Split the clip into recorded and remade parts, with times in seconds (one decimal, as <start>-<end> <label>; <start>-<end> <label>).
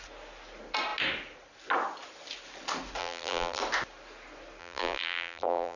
0.0-3.0 recorded; 3.0-3.6 remade; 3.6-4.6 recorded; 4.6-5.8 remade